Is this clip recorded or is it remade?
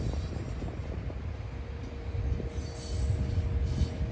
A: recorded